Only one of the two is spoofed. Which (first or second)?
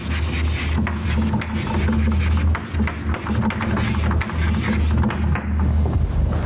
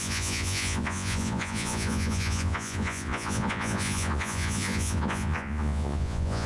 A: second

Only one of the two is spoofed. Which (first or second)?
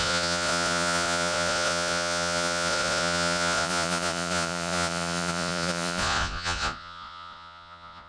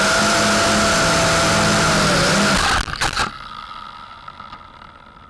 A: first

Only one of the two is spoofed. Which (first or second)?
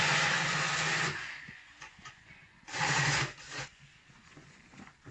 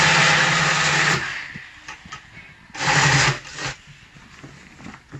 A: first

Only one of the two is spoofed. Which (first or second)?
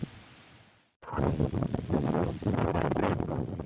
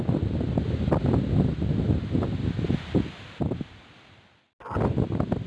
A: first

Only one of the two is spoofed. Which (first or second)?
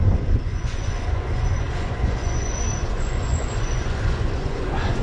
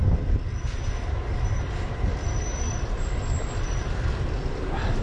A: first